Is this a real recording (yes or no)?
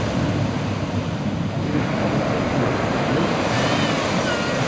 yes